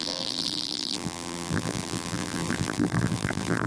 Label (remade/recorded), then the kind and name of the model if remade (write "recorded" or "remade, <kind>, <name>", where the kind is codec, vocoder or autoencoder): remade, vocoder, BigVGAN v2